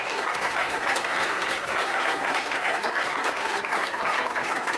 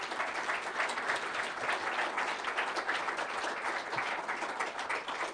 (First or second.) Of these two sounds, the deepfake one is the first